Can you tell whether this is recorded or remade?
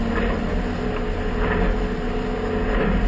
recorded